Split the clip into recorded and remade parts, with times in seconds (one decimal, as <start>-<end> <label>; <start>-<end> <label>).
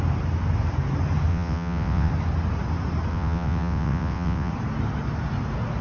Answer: 0.0-1.3 recorded; 1.3-2.1 remade; 2.1-3.1 recorded; 3.1-4.5 remade; 4.5-5.8 recorded